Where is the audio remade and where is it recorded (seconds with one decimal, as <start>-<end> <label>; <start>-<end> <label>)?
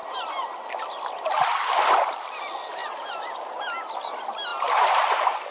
0.0-2.8 recorded; 2.8-3.4 remade; 3.4-4.5 recorded; 4.5-5.5 remade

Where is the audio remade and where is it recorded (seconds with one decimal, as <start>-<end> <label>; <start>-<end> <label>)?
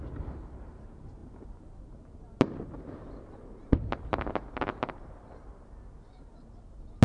0.0-7.0 recorded